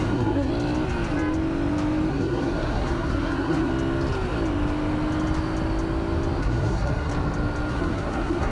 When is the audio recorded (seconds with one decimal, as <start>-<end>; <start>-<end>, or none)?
0.5-2.1; 3.7-6.4; 7.1-7.7